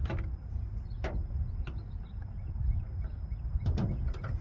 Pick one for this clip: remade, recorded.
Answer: recorded